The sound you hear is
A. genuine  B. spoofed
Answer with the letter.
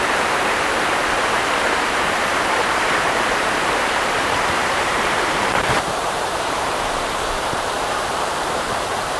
B